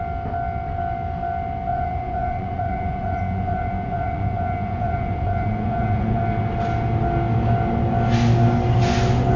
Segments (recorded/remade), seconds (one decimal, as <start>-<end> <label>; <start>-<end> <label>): 0.0-1.7 recorded; 1.7-6.2 remade; 6.2-9.4 recorded